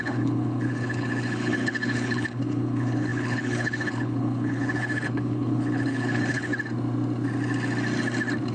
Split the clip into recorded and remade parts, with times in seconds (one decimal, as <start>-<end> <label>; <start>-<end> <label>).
0.0-6.5 remade; 6.5-8.5 recorded